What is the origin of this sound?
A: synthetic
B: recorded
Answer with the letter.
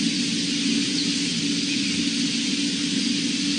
B